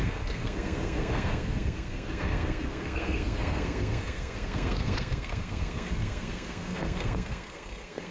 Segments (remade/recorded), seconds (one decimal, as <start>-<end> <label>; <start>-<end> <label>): 0.0-8.1 remade